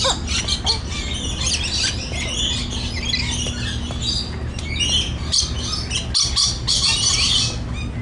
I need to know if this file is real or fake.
real